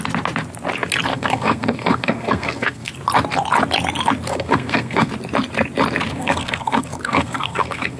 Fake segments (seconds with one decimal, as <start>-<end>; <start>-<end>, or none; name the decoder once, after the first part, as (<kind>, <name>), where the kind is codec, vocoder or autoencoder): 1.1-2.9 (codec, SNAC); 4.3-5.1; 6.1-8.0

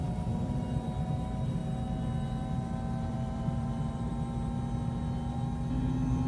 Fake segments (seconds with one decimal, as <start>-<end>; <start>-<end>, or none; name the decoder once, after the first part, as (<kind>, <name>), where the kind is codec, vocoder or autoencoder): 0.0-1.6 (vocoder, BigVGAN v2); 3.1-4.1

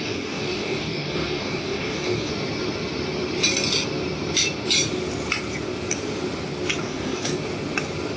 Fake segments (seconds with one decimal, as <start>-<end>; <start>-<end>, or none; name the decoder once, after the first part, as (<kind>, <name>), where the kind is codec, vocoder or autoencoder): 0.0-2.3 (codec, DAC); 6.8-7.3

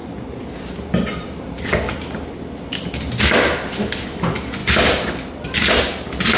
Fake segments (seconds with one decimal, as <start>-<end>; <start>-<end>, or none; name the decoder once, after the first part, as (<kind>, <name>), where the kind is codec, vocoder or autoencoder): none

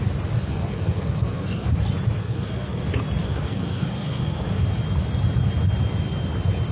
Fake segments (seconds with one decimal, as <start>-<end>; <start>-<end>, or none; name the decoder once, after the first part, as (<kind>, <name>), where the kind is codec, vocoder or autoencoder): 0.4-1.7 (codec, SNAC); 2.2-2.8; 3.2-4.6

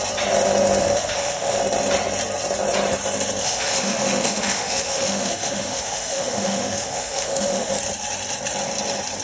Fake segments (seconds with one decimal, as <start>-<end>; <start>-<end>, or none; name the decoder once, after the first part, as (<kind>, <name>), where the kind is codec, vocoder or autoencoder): 0.8-1.6 (autoencoder, DAC-VAE); 3.4-7.7

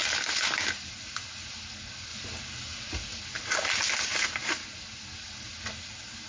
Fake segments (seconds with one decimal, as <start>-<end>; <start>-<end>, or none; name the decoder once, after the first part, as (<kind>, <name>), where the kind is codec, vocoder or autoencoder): 0.0-0.9 (vocoder, BigVGAN v2)